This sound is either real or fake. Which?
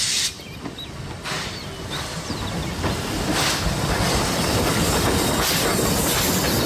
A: real